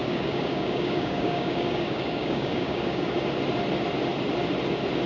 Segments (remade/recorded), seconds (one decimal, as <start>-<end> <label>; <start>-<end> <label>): 0.0-3.1 remade; 3.1-5.1 recorded